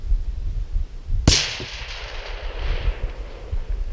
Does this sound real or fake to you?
real